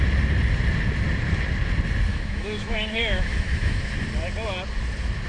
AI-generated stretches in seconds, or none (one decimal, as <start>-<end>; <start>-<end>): 2.1-3.9